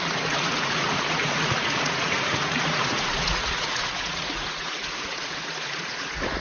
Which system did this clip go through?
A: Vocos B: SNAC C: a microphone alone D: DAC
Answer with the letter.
A